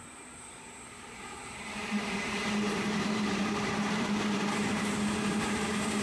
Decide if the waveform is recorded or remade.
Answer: remade